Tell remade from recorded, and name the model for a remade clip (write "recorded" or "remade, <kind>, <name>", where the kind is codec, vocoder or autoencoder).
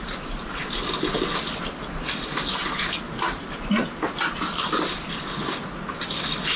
recorded